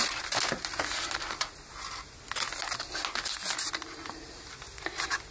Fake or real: real